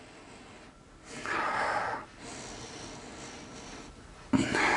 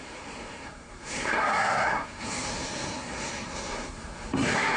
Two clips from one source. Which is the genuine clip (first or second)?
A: first